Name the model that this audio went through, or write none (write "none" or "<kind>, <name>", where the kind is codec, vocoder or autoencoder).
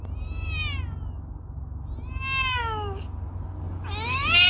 none